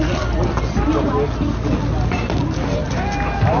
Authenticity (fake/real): real